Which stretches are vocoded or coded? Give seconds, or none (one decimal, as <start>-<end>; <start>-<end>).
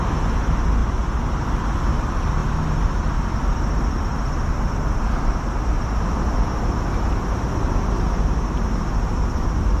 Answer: none